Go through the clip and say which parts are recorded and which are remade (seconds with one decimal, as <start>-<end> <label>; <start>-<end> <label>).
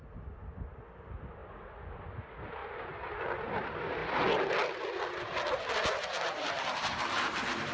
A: 0.0-2.6 recorded; 2.6-3.2 remade; 3.2-7.7 recorded